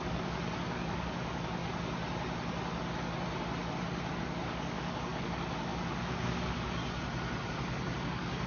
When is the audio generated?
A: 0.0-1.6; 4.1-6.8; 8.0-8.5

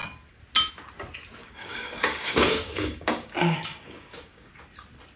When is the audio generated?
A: 1.4-4.5

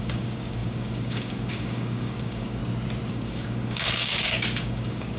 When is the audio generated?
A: 0.0-2.6; 3.1-5.2